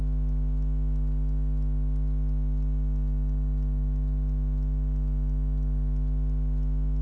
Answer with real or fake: real